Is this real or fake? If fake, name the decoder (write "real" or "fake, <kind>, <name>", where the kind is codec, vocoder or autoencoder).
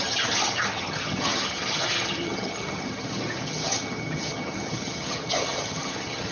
fake, vocoder, HiFi-GAN